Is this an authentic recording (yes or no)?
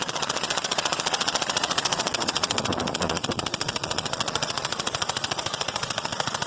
no